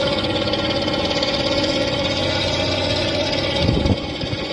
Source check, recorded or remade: remade